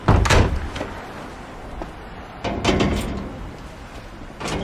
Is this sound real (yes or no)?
yes